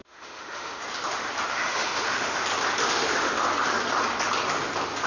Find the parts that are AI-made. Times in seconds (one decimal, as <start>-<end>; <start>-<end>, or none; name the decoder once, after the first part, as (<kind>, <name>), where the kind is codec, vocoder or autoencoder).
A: 0.0-0.8 (autoencoder, DAC-VAE); 1.5-2.4; 2.8-3.4